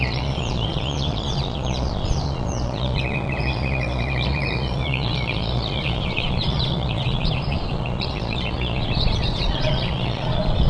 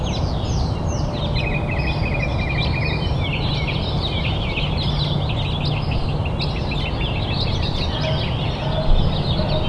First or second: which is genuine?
second